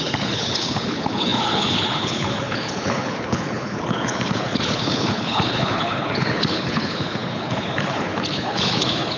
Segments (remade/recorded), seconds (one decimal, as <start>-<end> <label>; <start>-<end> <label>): 0.0-9.2 remade